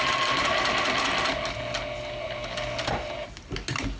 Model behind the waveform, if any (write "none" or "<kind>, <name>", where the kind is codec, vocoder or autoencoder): none